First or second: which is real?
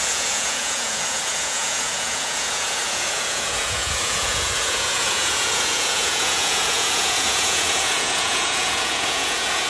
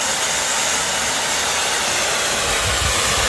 second